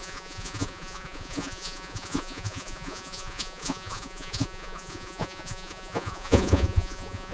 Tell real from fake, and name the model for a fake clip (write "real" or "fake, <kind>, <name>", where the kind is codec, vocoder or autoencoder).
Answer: fake, vocoder, Vocos